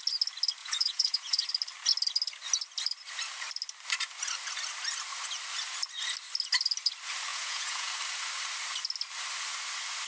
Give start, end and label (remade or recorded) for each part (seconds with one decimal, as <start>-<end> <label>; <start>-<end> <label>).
0.0-0.6 recorded; 0.6-1.5 remade; 1.5-7.3 recorded; 7.3-7.9 remade; 7.9-10.1 recorded